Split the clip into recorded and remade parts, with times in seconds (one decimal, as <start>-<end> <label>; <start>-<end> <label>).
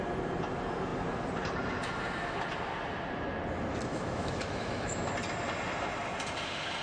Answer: 0.0-3.9 recorded; 3.9-5.1 remade; 5.1-6.8 recorded